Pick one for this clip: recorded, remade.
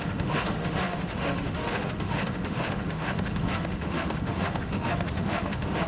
remade